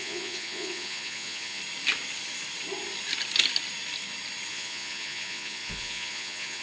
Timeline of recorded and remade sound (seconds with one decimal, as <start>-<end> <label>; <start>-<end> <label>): 0.0-1.6 remade; 1.6-4.5 recorded; 4.5-6.6 remade